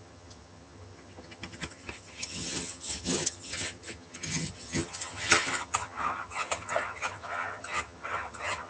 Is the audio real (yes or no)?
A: no